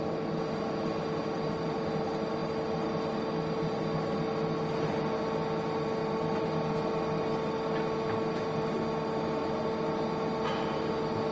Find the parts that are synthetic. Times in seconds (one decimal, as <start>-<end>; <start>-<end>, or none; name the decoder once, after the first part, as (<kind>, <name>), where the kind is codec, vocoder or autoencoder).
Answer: none